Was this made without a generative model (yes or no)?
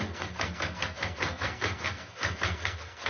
no